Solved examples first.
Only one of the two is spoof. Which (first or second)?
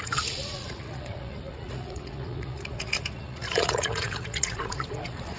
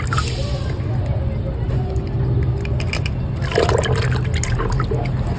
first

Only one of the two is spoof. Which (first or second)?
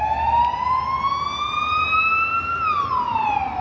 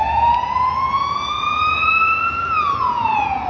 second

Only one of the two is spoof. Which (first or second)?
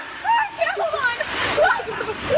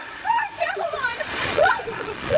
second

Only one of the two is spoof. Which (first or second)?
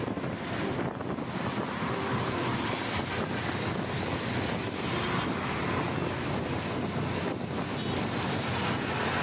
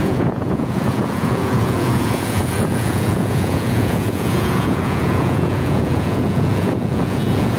second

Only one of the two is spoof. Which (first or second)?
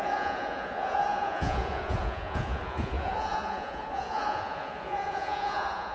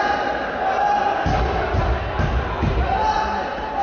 first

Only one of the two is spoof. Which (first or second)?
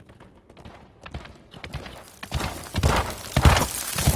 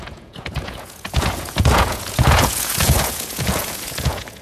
second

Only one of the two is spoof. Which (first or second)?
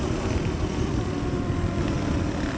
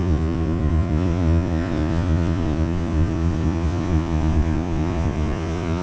second